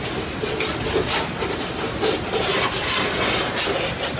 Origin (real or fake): real